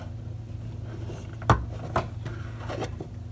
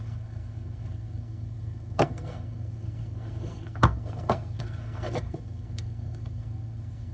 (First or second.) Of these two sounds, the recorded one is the first